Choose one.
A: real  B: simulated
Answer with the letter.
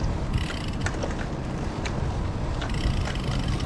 A